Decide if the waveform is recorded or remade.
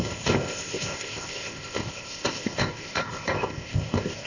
remade